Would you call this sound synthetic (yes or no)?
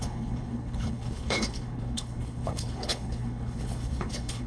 yes